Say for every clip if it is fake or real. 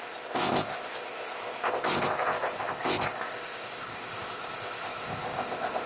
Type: fake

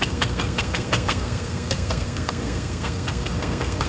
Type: fake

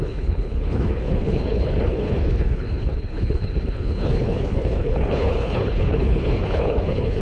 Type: fake